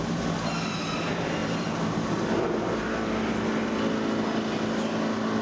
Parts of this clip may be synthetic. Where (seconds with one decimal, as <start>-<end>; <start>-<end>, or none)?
none